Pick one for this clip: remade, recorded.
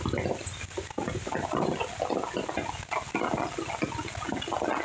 recorded